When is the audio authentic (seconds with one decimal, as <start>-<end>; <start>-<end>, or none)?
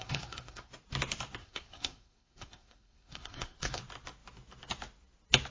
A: 0.7-1.4; 3.8-5.5